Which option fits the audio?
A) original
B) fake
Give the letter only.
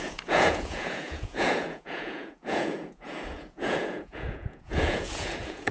B